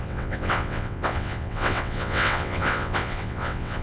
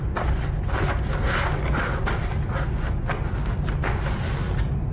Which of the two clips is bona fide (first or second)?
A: second